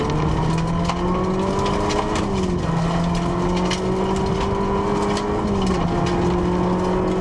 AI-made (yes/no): no